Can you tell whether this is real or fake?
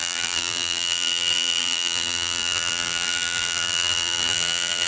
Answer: fake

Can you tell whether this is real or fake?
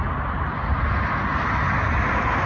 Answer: real